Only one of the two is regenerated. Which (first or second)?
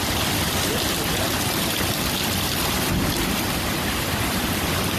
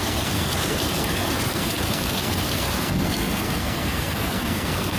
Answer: second